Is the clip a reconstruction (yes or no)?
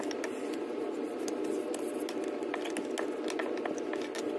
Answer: no